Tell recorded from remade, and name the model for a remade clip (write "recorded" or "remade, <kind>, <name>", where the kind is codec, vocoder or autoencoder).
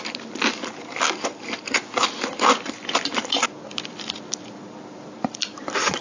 recorded